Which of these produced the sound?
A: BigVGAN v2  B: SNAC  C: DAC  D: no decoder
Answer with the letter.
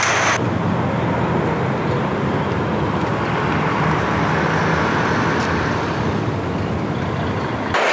D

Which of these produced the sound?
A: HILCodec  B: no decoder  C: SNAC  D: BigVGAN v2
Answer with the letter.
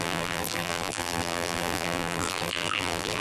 D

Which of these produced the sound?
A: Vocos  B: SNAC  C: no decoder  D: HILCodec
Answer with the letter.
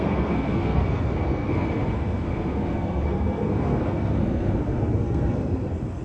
B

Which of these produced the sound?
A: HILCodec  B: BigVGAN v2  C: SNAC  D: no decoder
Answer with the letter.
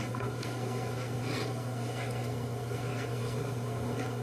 C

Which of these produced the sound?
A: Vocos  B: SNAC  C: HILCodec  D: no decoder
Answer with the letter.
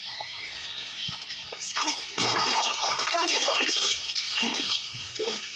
B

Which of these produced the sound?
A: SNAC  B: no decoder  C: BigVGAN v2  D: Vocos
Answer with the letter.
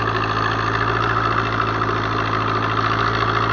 B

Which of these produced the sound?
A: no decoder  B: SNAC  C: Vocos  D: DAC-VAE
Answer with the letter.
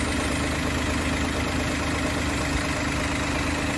A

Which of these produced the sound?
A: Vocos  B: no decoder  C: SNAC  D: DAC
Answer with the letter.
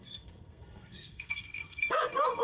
C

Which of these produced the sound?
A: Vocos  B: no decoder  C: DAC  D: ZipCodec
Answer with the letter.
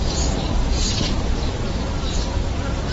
B